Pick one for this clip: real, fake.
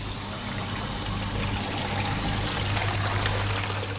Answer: real